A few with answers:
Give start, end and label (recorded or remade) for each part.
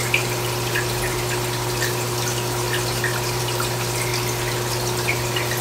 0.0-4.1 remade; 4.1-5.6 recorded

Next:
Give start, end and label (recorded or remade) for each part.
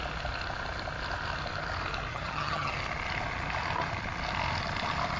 0.0-2.1 recorded; 2.1-2.7 remade; 2.7-5.2 recorded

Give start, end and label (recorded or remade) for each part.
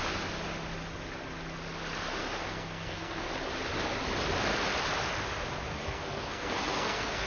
0.0-2.2 recorded; 2.2-3.3 remade; 3.3-5.7 recorded; 5.7-7.3 remade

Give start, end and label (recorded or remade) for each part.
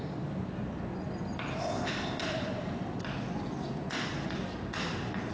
0.0-1.6 recorded; 1.6-2.2 remade; 2.2-5.3 recorded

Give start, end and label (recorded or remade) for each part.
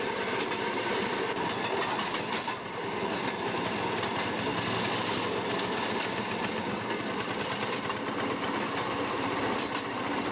0.0-10.3 recorded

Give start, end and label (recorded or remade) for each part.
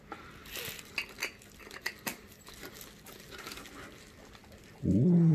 0.0-5.3 recorded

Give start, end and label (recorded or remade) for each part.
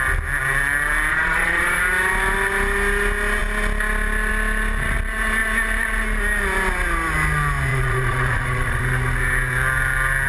0.0-1.1 recorded; 1.1-1.8 remade; 1.8-7.7 recorded; 7.7-8.8 remade; 8.8-10.3 recorded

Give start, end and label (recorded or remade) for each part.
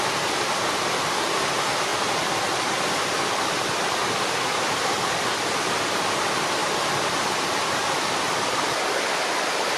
0.0-9.8 recorded